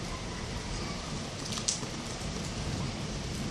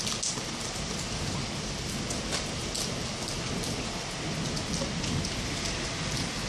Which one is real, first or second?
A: second